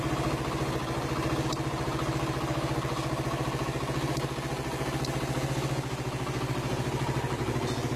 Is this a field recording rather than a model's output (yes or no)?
yes